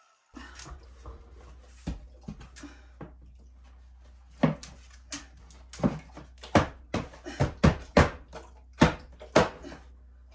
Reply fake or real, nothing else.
real